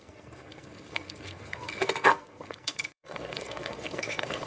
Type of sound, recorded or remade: remade